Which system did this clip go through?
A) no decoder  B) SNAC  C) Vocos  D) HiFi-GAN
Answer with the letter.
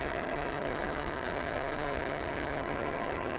D